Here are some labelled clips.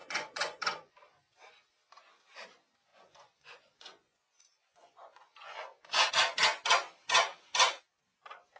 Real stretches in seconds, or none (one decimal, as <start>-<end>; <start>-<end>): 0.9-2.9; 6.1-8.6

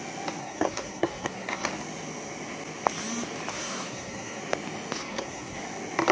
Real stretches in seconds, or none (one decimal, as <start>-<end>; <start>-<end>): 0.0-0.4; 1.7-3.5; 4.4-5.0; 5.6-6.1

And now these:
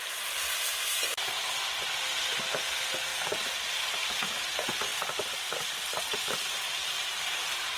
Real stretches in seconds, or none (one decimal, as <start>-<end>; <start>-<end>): 0.0-7.8

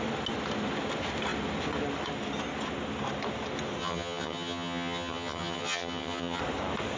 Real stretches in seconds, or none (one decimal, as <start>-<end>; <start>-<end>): 0.0-3.8; 6.4-7.0